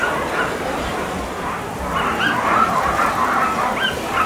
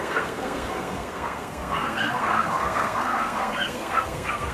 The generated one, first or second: second